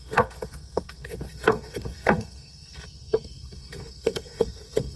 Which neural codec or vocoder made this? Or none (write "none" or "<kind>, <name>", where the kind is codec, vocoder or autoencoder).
codec, SNAC